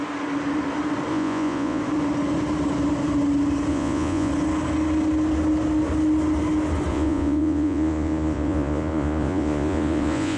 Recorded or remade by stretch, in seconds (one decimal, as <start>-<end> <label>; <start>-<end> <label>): 0.0-1.1 recorded; 1.1-1.8 remade; 1.8-3.7 recorded; 3.7-4.3 remade; 4.3-6.9 recorded; 6.9-10.4 remade